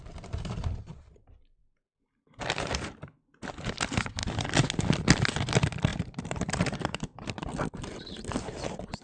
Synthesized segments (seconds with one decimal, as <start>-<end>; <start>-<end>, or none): 5.9-7.3